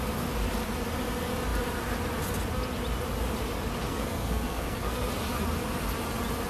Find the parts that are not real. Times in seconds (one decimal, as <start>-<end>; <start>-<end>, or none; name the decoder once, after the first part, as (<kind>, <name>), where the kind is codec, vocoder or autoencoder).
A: 3.8-5.1 (codec, SNAC)